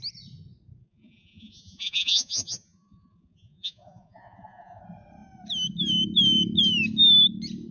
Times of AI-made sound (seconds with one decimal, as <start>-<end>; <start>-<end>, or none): 0.8-4.8